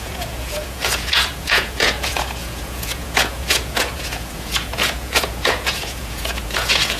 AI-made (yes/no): yes